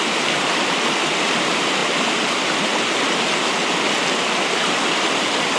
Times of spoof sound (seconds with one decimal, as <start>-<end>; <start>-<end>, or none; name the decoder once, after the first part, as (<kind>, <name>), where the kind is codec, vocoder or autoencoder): none